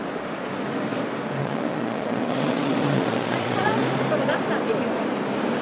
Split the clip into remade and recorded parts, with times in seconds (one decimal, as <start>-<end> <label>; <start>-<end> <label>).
0.0-1.4 recorded; 1.4-3.8 remade; 3.8-5.6 recorded